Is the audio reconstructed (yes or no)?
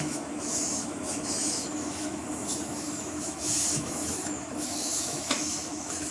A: yes